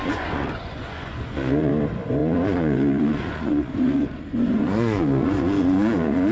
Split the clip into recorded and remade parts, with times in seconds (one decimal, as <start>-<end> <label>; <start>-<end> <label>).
0.0-1.7 remade; 1.7-2.2 recorded; 2.2-6.3 remade